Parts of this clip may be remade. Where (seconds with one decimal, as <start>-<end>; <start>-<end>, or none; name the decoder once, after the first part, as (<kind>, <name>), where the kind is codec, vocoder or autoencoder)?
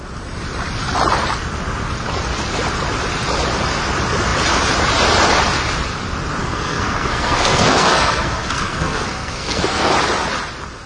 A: 6.4-9.9 (codec, SNAC)